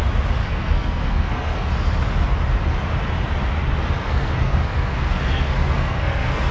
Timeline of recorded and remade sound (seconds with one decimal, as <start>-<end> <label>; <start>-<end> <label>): 0.0-0.4 recorded; 0.4-1.7 remade; 1.7-4.0 recorded; 4.0-6.5 remade